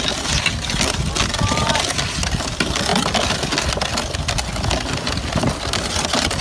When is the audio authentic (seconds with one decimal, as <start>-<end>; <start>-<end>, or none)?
0.0-6.4